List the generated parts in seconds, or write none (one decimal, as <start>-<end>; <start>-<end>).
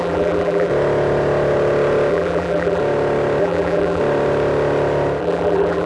0.0-0.7; 2.1-2.8; 3.4-4.0; 5.2-5.9